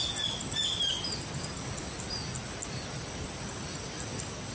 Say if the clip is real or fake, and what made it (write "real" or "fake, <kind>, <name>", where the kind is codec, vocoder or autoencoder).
real